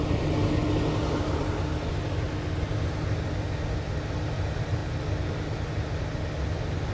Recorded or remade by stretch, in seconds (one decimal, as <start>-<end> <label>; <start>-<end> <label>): 0.0-6.9 recorded